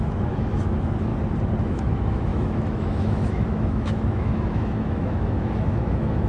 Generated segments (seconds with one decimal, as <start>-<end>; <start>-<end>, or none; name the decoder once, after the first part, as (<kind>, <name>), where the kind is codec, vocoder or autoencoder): 0.0-1.1 (autoencoder, DAC-VAE); 1.6-6.3